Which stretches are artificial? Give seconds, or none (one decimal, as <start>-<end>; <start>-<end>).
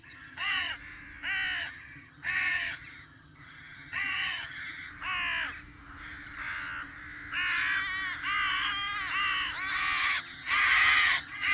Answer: 0.0-0.7; 1.6-4.9; 10.0-11.5